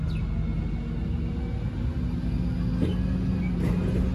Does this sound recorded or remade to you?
recorded